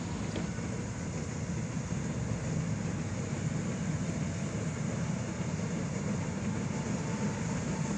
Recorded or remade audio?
recorded